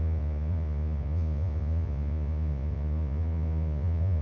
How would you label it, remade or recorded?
remade